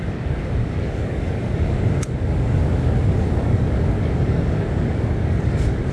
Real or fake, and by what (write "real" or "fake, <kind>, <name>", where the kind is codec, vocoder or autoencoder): fake, codec, DAC